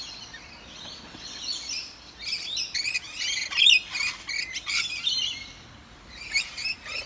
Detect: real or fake real